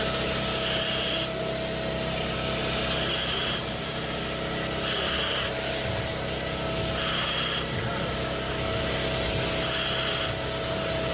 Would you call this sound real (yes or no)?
yes